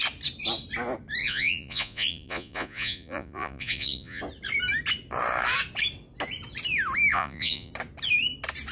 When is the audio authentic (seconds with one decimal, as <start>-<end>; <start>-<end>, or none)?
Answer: 0.0-1.2; 4.2-7.1; 7.7-8.7